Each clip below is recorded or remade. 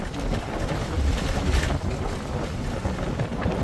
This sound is recorded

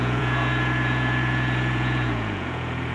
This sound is remade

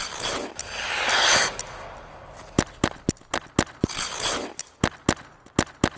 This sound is recorded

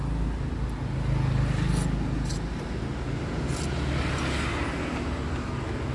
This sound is recorded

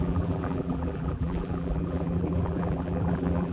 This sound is remade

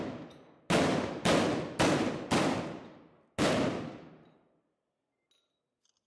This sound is recorded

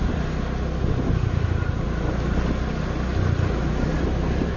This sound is recorded